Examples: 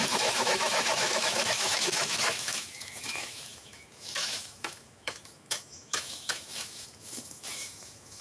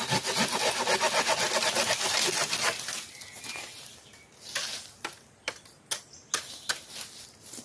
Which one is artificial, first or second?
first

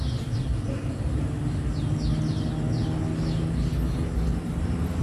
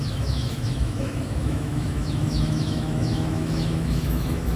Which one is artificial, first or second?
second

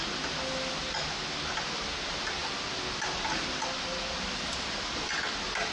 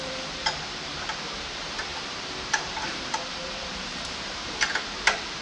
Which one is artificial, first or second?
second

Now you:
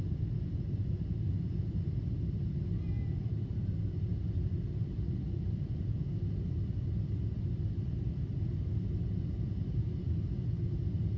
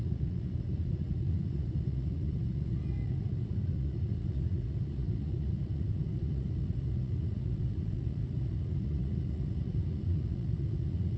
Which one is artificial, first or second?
second